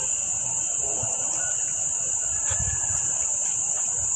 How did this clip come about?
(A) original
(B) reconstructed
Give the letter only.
B